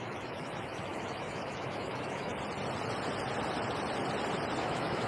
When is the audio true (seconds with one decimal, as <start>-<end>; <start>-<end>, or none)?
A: 2.3-4.6